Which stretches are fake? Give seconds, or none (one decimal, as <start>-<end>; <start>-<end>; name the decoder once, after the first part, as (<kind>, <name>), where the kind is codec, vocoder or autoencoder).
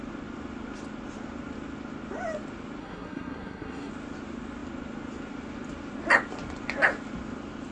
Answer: 2.8-3.9 (codec, SNAC)